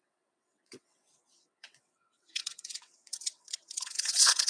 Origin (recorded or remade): remade